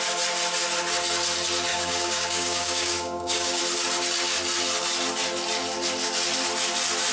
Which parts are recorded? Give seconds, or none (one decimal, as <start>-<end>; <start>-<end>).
0.0-1.7; 3.6-7.1